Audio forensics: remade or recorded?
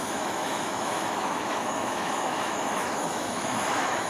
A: remade